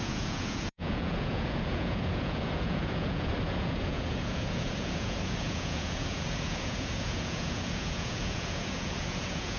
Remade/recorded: remade